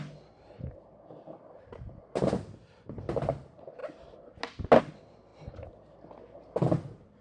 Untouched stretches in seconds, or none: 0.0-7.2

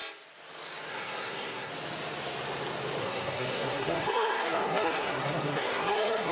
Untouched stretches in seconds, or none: 0.0-0.9; 1.7-3.0

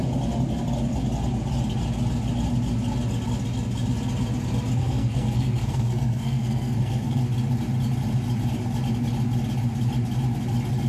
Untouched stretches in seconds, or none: 0.0-4.8; 7.2-10.9

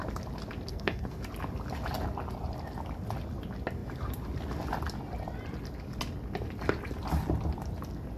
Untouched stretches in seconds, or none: 0.0-0.7; 1.2-8.2

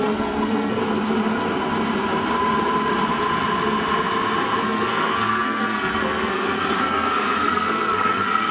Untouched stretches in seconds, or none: 0.8-4.6

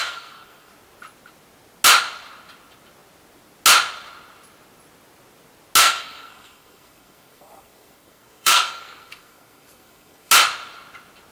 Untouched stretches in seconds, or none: 0.7-5.8; 10.3-11.3

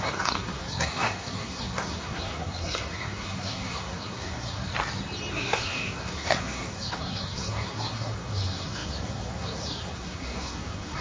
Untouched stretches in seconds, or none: 4.7-5.3